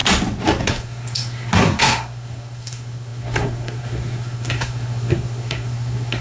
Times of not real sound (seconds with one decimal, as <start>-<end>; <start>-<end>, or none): 0.6-6.2